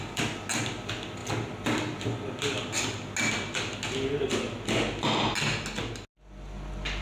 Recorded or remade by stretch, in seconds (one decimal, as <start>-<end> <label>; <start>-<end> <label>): 0.0-7.0 recorded